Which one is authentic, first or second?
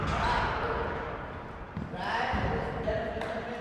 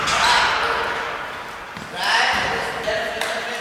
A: second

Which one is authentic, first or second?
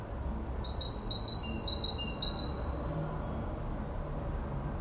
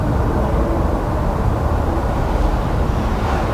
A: first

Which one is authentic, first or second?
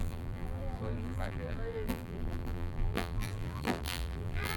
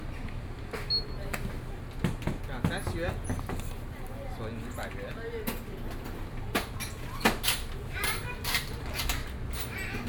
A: second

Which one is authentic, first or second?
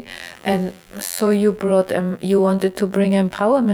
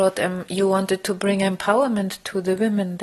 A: second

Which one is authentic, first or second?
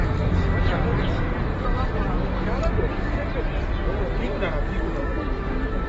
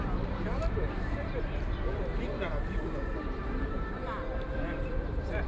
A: first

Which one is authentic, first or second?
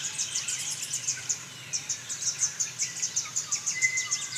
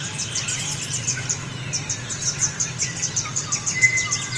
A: second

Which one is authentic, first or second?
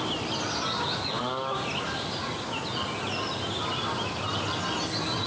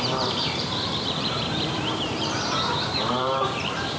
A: first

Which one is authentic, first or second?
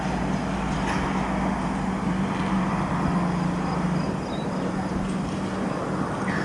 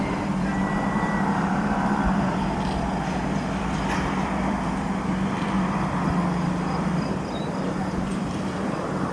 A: first